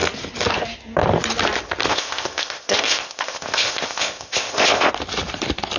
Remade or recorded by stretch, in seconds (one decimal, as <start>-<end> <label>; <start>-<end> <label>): 0.0-1.9 recorded; 1.9-4.9 remade; 4.9-5.8 recorded